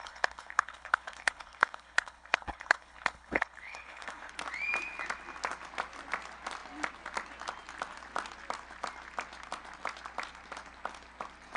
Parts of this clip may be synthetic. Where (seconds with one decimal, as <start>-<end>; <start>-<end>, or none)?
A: 0.0-4.3